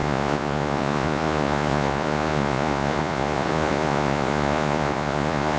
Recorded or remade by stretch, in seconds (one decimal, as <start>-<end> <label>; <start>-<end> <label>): 0.0-5.6 remade